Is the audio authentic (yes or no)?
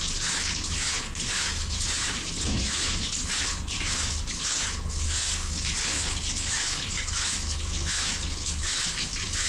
no